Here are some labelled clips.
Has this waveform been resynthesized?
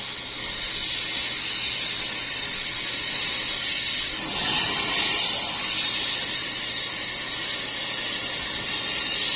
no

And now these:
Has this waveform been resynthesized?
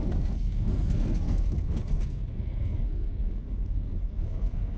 yes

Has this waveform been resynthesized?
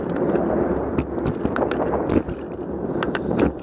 no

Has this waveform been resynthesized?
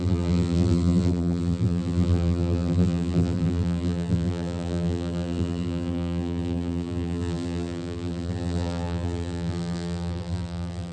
yes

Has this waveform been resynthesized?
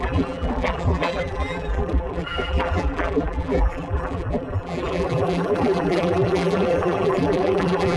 yes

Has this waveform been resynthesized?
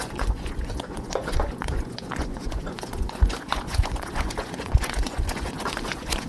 yes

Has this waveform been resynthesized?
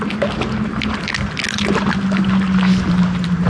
no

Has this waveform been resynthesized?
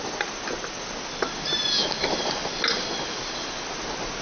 no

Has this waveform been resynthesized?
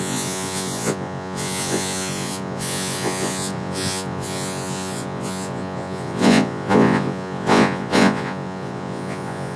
yes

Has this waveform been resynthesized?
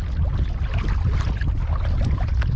no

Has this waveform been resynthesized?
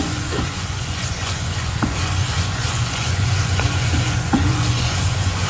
yes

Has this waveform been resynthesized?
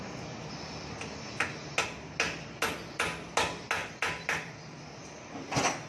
no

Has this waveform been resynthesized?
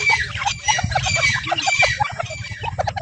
no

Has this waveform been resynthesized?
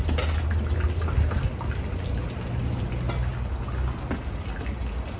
no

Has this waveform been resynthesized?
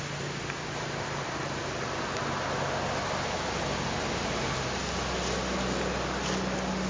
no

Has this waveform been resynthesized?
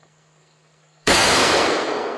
yes